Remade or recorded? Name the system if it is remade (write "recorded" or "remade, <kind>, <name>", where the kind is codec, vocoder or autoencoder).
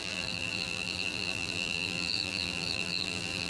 remade, vocoder, BigVGAN v2